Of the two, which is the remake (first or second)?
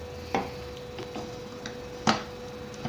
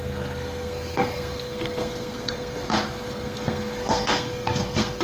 second